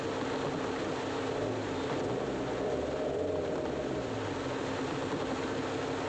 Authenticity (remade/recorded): recorded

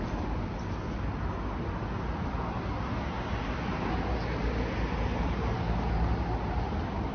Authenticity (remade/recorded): recorded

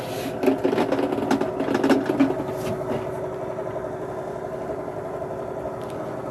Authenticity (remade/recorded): recorded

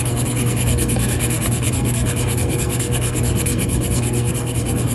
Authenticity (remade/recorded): remade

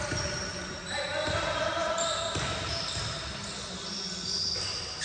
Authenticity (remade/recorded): recorded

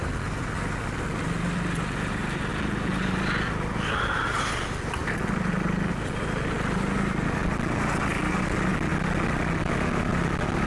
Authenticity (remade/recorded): recorded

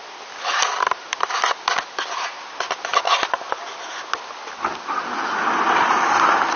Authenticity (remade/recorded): recorded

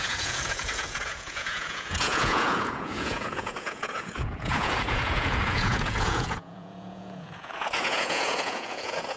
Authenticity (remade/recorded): remade